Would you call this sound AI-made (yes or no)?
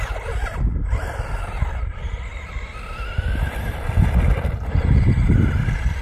no